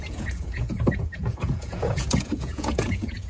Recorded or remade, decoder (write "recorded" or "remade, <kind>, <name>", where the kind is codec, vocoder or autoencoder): remade, vocoder, Vocos